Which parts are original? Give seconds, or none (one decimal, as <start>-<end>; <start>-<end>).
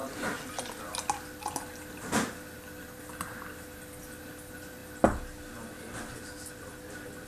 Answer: 0.0-7.3